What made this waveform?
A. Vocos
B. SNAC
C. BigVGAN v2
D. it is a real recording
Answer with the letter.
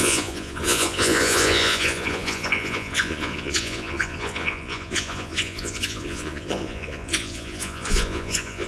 A